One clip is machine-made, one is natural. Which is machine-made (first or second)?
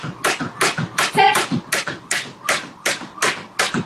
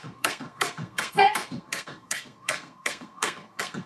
second